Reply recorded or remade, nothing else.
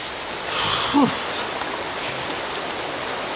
recorded